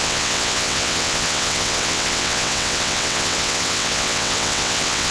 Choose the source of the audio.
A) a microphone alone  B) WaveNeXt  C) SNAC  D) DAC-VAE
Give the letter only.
B